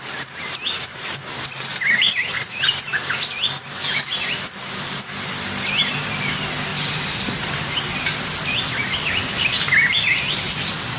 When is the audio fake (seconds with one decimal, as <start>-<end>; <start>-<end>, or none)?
none